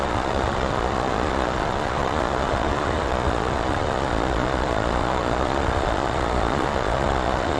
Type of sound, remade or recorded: remade